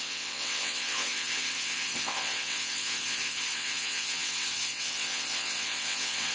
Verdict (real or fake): fake